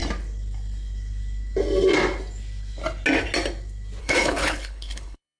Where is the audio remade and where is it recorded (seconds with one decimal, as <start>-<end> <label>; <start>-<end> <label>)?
0.0-4.0 recorded; 4.0-5.4 remade